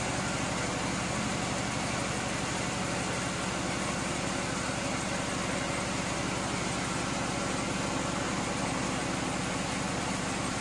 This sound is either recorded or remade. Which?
recorded